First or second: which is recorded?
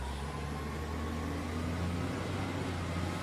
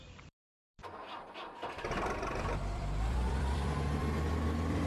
first